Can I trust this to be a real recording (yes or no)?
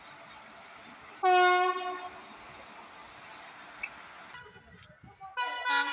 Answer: yes